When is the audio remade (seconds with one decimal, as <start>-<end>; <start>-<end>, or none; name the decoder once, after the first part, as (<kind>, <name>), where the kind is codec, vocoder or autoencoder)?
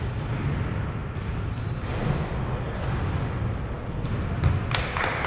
none